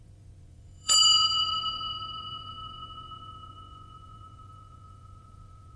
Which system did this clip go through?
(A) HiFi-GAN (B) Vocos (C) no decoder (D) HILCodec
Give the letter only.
B